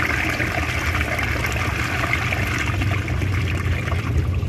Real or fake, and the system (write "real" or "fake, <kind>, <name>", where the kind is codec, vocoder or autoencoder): real